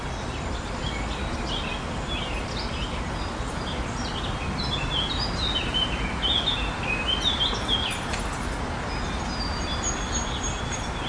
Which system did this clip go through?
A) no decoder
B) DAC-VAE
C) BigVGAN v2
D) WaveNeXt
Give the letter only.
A